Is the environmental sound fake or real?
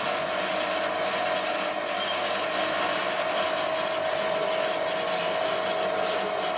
real